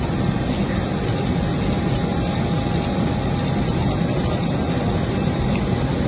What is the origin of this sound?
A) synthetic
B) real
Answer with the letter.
B